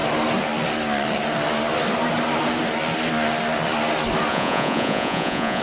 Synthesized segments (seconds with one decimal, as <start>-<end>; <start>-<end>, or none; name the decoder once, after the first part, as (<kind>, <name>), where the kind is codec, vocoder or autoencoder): 4.3-5.6 (vocoder, Vocos)